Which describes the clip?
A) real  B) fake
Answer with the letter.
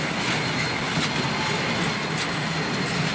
A